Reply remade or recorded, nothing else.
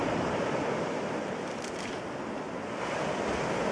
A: recorded